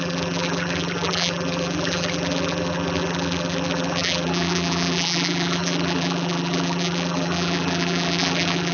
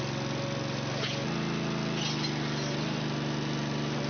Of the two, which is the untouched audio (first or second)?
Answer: second